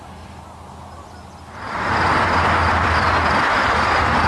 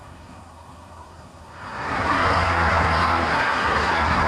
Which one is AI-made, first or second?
second